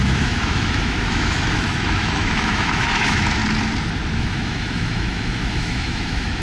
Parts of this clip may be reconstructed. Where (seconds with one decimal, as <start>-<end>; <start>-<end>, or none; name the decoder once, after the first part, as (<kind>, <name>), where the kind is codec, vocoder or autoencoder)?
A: 0.0-3.4 (autoencoder, DAC-VAE); 4.2-6.4